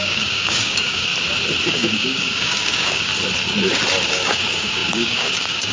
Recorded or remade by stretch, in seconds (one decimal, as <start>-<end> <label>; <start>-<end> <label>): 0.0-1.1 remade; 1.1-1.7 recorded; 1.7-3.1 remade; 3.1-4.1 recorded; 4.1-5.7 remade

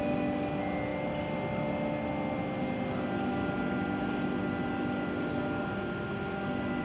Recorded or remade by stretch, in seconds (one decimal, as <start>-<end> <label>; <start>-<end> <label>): 0.0-6.8 recorded

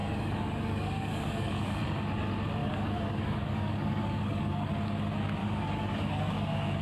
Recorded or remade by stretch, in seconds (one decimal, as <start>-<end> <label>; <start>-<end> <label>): 0.0-1.8 remade; 1.8-2.6 recorded; 2.6-4.7 remade; 4.7-5.4 recorded; 5.4-6.8 remade